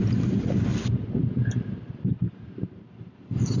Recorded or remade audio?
remade